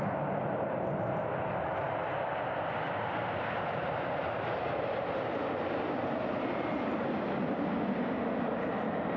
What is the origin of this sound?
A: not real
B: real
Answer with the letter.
B